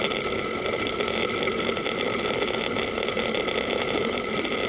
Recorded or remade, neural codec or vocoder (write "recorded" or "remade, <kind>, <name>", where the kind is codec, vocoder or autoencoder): recorded